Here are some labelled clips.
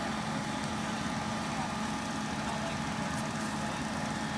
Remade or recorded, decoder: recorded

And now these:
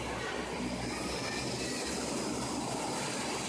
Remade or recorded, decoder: recorded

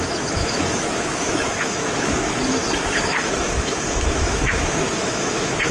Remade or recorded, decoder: remade, autoencoder, DAC-VAE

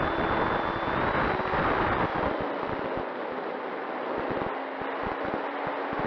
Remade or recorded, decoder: recorded